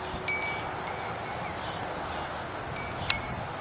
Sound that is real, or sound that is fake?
real